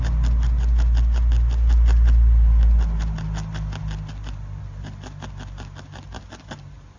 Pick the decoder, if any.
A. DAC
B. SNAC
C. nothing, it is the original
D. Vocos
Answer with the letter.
C